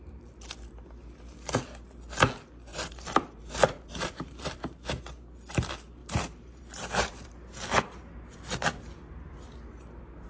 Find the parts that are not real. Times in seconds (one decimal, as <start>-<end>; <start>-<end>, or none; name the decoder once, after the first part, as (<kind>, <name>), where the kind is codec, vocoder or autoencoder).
2.7-4.9 (vocoder, BigVGAN v2); 6.0-7.3